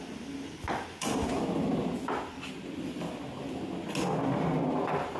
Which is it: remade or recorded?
recorded